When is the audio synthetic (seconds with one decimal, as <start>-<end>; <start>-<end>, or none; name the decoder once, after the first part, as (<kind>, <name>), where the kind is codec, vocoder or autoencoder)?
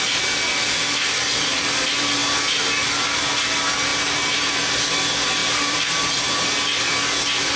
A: 3.9-4.5 (vocoder, BigVGAN v2); 5.4-6.5